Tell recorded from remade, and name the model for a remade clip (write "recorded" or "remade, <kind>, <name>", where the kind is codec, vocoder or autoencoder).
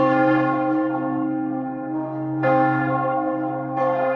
remade, codec, SNAC